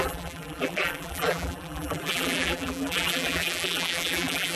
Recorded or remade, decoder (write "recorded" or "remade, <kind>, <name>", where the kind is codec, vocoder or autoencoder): remade, vocoder, BigVGAN v2